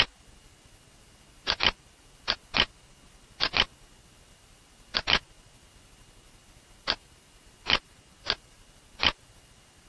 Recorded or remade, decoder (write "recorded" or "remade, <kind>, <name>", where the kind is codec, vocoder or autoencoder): recorded